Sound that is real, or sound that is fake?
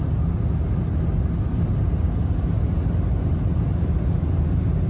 real